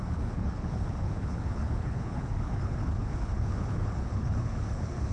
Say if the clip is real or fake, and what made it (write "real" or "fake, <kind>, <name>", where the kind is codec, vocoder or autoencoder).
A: fake, codec, HILCodec